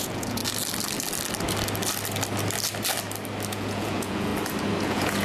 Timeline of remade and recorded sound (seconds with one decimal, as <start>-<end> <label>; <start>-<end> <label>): 0.0-0.4 remade; 0.4-3.5 recorded; 3.5-4.3 remade; 4.3-4.8 recorded; 4.8-5.2 remade